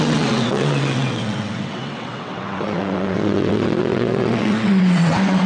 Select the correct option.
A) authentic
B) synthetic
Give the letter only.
B